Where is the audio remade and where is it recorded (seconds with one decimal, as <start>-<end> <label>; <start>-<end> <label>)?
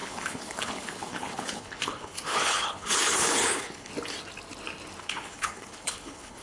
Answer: 0.0-3.9 remade; 3.9-5.0 recorded; 5.0-6.4 remade